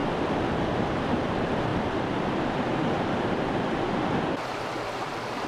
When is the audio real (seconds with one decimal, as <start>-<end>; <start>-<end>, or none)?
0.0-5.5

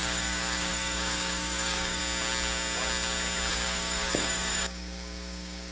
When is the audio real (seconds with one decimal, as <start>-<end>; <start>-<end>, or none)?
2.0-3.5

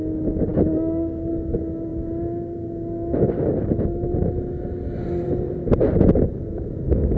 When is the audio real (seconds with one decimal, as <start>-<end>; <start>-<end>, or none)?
0.0-0.5; 1.3-7.2